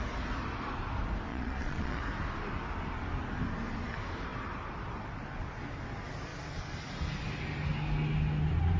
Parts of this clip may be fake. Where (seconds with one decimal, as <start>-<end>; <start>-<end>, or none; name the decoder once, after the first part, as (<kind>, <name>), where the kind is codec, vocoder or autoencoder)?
1.3-2.0 (vocoder, Vocos)